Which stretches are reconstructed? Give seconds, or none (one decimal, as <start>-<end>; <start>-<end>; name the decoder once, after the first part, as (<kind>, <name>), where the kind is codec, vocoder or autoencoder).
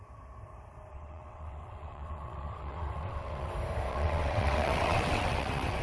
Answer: 0.9-3.5 (vocoder, WaveNeXt); 3.9-5.8